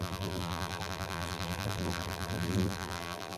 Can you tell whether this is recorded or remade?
remade